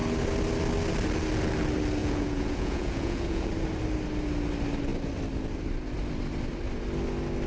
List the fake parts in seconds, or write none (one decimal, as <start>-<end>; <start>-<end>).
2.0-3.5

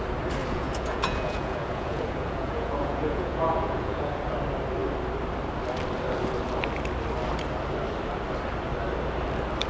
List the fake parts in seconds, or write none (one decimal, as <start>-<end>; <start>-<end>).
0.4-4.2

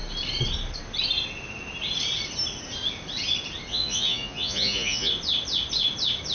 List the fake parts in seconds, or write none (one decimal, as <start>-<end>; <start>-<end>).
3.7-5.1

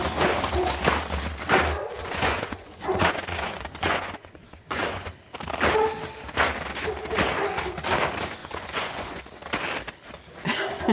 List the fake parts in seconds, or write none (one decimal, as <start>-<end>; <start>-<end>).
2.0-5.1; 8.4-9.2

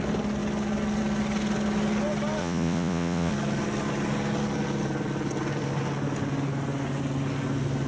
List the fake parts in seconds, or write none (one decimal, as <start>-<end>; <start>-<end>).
2.4-3.3